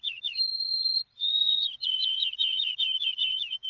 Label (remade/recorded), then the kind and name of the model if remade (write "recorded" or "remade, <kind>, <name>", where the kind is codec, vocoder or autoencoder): remade, vocoder, Vocos